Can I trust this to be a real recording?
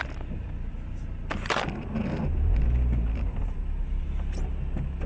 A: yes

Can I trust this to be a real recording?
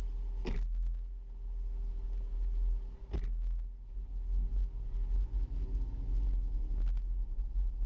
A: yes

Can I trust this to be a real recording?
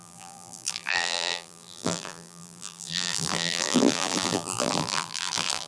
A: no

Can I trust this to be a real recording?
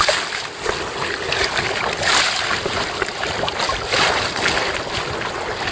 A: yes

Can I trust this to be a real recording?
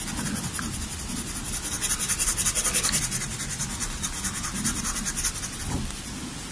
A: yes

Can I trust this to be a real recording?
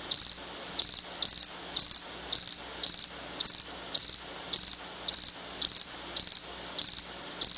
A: yes